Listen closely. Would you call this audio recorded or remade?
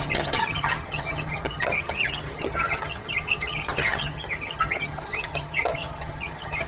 remade